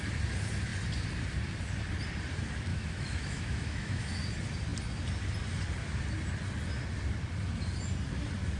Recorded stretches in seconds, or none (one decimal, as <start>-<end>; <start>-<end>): 0.0-2.7; 4.2-8.6